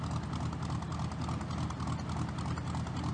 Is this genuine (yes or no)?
yes